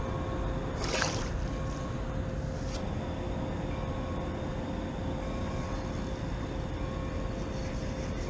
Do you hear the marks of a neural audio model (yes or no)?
no